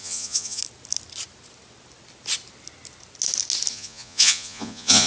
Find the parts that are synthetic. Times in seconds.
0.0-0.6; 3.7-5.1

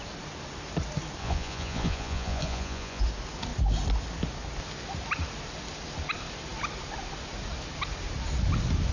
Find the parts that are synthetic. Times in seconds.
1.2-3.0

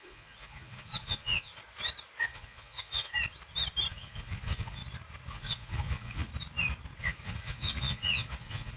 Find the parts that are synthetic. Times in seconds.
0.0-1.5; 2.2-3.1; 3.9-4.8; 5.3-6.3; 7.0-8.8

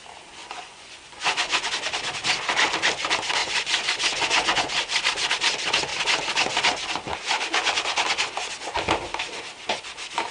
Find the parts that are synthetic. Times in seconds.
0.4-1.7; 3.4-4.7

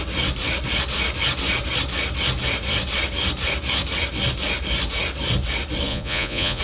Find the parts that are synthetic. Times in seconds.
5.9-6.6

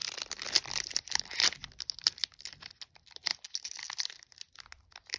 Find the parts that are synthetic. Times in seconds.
none

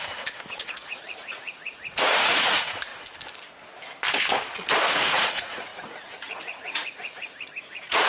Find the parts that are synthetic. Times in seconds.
0.0-2.9; 4.9-8.1

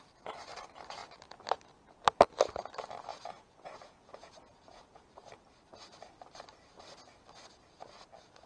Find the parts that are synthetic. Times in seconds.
3.1-5.0